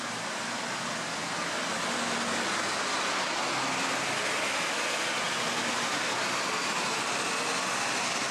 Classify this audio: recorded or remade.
recorded